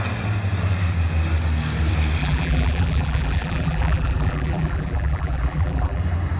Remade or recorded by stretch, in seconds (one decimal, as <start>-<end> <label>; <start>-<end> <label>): 0.0-2.2 recorded; 2.2-6.0 remade; 6.0-6.4 recorded